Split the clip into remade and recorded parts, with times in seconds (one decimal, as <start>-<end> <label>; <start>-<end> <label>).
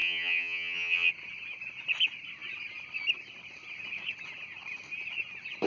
0.0-1.1 remade; 1.1-5.7 recorded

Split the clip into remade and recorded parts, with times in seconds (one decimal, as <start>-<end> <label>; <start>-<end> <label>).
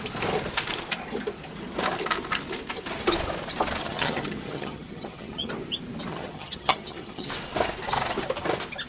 0.0-3.8 recorded; 3.8-5.5 remade; 5.5-6.1 recorded; 6.1-7.3 remade; 7.3-8.9 recorded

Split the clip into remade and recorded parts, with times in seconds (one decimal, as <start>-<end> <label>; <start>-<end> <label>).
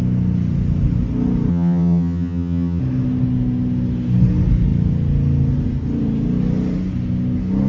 0.0-1.5 recorded; 1.5-2.8 remade; 2.8-7.7 recorded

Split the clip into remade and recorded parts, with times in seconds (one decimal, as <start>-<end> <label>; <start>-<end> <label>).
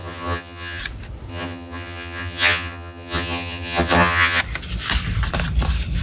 0.0-0.8 remade; 0.8-1.3 recorded; 1.3-4.4 remade; 4.4-6.0 recorded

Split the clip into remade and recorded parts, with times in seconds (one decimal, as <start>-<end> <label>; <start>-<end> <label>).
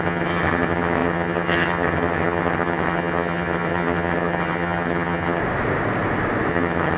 0.0-5.4 remade; 5.4-6.5 recorded; 6.5-7.0 remade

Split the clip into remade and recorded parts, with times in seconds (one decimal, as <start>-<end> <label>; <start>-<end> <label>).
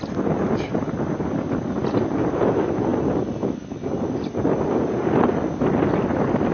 0.0-6.5 recorded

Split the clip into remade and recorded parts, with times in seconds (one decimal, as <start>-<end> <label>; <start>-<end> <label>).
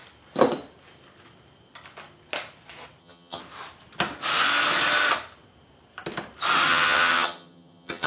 0.0-3.0 recorded; 3.0-3.4 remade; 3.4-6.7 recorded; 6.7-8.1 remade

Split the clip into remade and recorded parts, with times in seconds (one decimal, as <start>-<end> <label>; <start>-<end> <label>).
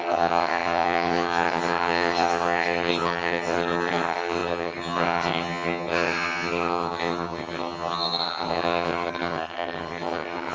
0.0-10.5 remade